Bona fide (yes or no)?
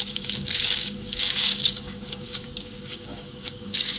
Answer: no